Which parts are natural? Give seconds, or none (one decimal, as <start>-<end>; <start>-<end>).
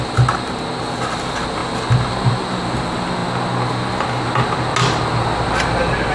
0.0-6.1